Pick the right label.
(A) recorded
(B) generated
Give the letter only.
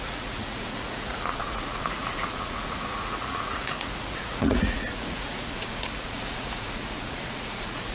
B